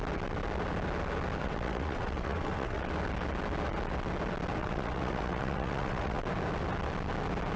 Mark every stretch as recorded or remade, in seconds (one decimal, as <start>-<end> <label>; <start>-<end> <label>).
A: 0.0-1.4 recorded; 1.4-2.8 remade; 2.8-4.6 recorded; 4.6-6.2 remade; 6.2-7.6 recorded